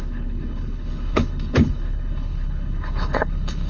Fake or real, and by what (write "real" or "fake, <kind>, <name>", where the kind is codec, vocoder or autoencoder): fake, codec, HILCodec